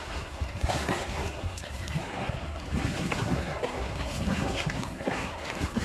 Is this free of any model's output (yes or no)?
no